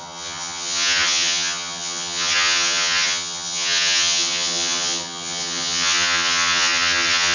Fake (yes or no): yes